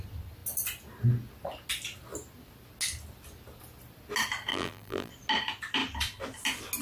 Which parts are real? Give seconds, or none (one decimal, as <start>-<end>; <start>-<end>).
0.0-4.5; 5.1-6.8